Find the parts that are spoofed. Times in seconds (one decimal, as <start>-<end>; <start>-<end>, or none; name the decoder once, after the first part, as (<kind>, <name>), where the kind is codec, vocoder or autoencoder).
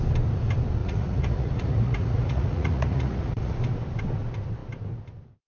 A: 0.8-3.6 (vocoder, Vocos)